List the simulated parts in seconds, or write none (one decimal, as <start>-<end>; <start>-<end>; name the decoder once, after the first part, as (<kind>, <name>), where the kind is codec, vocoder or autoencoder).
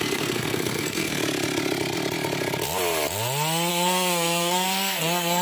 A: 0.0-1.2 (codec, SNAC); 3.7-5.4